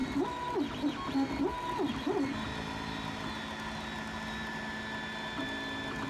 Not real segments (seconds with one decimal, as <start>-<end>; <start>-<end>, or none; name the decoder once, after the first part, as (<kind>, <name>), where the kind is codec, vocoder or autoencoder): none